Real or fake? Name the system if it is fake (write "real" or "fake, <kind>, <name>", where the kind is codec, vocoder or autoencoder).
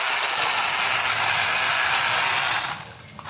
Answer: real